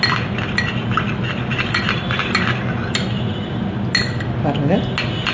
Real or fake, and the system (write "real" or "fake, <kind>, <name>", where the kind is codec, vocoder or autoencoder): real